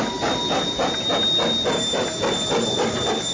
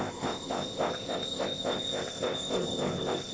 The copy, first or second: second